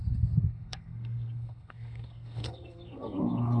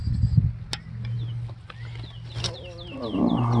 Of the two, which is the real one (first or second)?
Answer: second